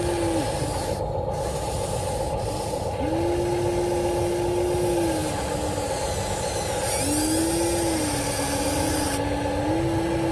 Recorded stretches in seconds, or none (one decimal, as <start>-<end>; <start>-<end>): 0.0-10.3